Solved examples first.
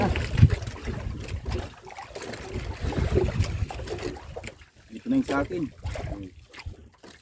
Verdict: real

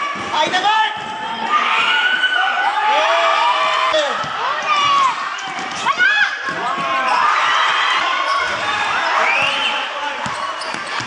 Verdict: fake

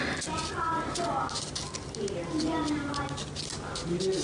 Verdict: real